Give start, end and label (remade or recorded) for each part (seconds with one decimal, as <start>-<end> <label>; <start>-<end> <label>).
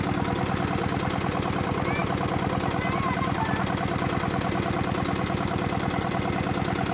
0.0-6.9 recorded